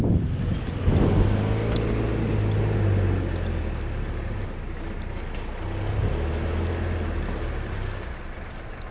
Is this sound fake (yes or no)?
no